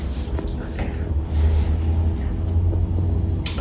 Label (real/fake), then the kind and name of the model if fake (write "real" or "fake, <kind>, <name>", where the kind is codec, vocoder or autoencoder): real